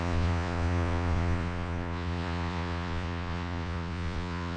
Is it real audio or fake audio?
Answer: fake